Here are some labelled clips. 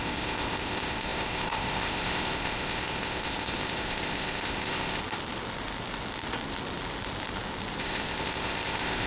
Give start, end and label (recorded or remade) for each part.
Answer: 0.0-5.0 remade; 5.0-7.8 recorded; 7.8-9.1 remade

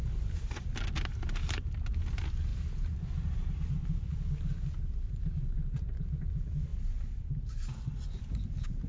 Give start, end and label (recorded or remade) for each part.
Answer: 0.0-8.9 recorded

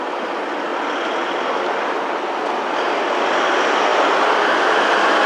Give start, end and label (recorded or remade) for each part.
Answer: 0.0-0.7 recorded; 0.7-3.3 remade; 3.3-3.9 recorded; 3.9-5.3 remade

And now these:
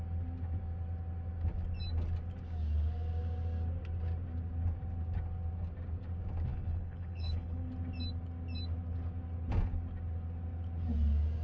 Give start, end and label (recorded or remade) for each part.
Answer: 0.0-6.5 recorded; 6.5-7.7 remade; 7.7-11.4 recorded